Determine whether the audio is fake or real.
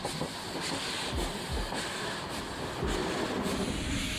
real